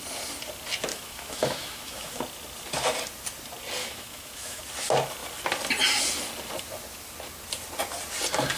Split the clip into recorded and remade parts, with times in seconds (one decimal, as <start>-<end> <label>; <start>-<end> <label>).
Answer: 0.0-0.9 recorded; 0.9-2.2 remade; 2.2-3.8 recorded; 3.8-4.6 remade; 4.6-8.6 recorded